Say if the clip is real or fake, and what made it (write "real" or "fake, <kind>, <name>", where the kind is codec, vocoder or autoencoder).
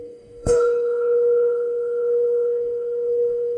fake, codec, DAC